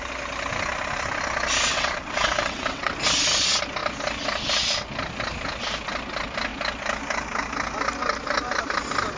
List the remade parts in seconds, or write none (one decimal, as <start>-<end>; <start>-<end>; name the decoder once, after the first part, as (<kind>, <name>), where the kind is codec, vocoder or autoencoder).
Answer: 1.7-2.9 (vocoder, WaveNeXt)